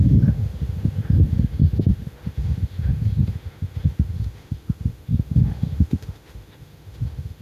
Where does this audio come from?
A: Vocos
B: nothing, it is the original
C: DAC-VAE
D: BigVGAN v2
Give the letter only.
C